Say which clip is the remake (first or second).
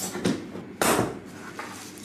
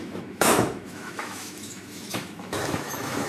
second